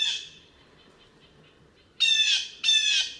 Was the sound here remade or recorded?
recorded